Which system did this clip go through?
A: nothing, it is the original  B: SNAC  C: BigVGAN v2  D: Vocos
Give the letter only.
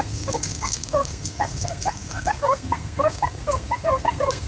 B